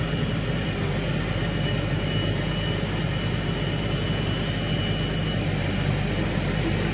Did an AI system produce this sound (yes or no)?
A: no